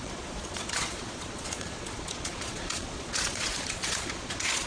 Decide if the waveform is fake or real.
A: fake